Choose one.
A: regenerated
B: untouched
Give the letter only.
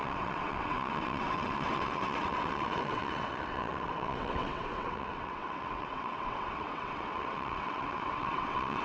A